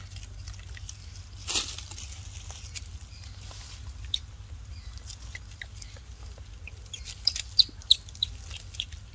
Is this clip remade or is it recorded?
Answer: recorded